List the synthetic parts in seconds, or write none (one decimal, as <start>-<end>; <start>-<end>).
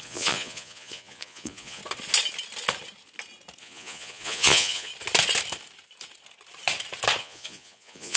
0.0-1.8; 3.6-4.9; 7.2-8.2